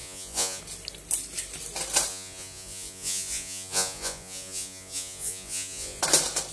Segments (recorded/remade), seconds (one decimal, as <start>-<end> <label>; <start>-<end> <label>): 0.0-0.6 remade; 0.6-2.1 recorded; 2.1-6.0 remade; 6.0-6.5 recorded